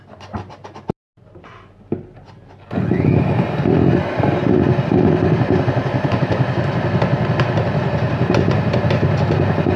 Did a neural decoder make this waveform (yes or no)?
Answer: no